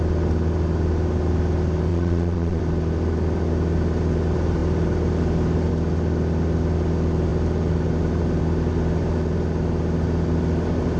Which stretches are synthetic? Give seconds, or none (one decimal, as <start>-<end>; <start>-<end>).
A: 1.9-2.6